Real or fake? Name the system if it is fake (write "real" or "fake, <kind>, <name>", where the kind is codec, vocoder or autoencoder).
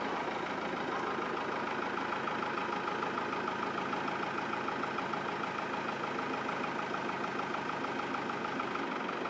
real